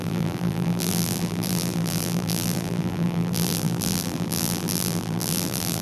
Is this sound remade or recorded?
remade